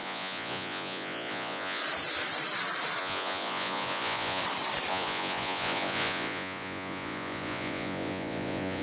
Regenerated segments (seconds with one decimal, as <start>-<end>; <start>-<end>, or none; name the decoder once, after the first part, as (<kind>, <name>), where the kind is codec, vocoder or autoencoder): 0.0-1.8 (vocoder, Vocos); 3.0-4.4; 4.9-8.8